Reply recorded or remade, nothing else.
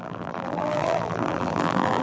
remade